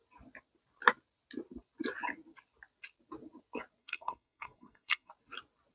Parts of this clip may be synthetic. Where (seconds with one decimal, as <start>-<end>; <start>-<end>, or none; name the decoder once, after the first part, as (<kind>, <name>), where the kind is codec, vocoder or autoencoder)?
3.8-5.1 (codec, SNAC)